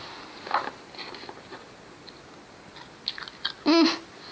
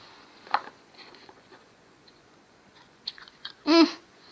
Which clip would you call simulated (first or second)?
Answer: second